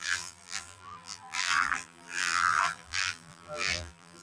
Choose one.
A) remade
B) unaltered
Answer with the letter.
A